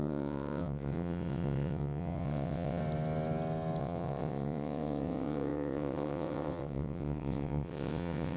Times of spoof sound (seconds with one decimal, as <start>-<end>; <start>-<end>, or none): 0.0-2.8; 3.8-8.4